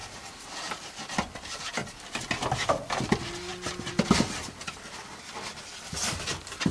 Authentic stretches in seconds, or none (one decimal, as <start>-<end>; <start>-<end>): 0.0-6.7